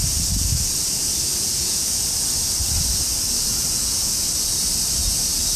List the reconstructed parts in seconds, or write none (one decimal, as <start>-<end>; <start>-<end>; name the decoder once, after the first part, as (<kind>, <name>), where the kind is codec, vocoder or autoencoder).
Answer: 1.3-2.1 (vocoder, Vocos); 3.5-4.1